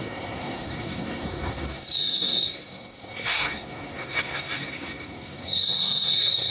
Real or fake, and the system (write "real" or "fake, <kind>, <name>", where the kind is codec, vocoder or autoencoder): fake, codec, SNAC